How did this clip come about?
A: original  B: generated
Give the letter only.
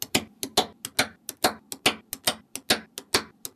A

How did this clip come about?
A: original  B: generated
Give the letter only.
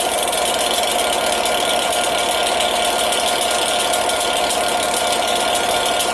A